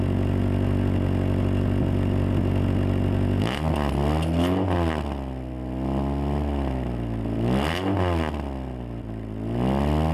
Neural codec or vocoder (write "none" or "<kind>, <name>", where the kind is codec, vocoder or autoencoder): none